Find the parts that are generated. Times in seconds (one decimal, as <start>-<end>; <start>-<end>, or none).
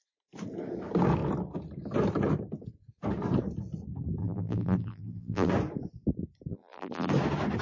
4.2-5.5; 6.5-7.1